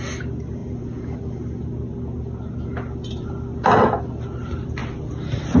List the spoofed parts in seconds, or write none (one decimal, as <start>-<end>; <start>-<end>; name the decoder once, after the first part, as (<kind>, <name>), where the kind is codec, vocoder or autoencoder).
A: none